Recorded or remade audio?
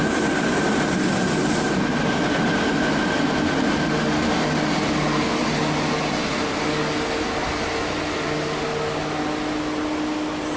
recorded